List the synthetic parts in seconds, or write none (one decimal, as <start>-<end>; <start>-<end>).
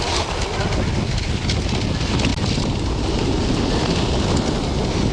2.3-3.3